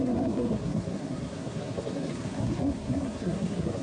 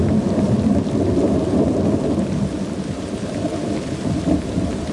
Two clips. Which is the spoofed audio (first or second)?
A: first